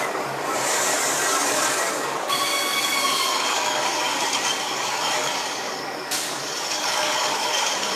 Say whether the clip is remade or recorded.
remade